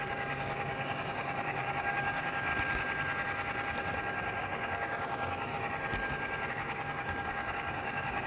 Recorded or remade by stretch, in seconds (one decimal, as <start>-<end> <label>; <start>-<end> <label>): 0.0-2.5 remade; 2.5-4.4 recorded; 4.4-5.5 remade; 5.5-6.5 recorded; 6.5-8.3 remade